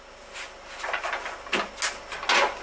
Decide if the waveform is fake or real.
real